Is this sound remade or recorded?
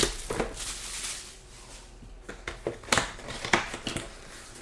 recorded